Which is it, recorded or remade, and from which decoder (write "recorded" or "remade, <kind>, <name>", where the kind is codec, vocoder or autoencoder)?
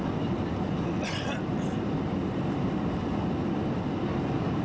recorded